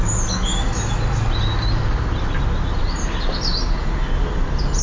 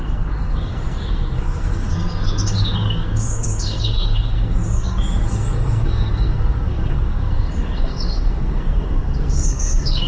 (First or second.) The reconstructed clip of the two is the second